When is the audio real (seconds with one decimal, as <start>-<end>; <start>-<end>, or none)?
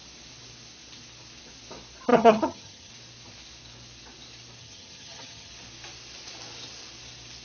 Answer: 0.0-2.1; 2.9-4.6; 5.5-7.4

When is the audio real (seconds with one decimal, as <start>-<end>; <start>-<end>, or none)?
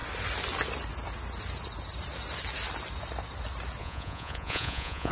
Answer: 0.0-3.8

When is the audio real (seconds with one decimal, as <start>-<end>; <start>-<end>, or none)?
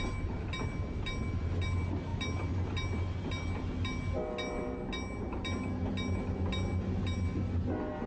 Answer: 0.0-8.1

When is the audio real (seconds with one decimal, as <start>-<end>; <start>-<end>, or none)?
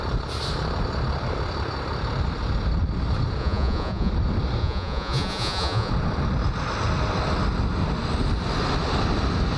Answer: 0.0-3.4; 4.1-4.6; 5.9-9.6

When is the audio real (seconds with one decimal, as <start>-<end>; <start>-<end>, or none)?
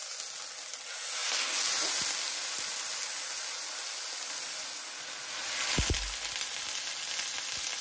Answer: 0.0-7.8